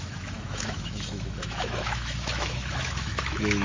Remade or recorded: remade